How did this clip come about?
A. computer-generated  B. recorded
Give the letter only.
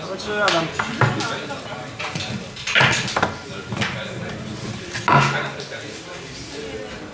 B